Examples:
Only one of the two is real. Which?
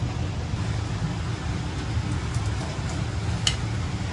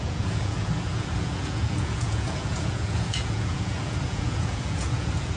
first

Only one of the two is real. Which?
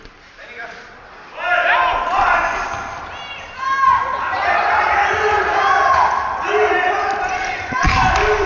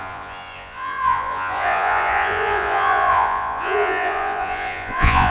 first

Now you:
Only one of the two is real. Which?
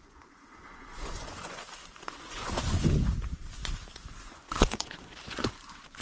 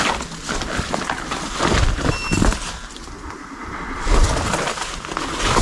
second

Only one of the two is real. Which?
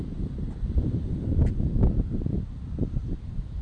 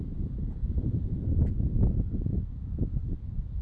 first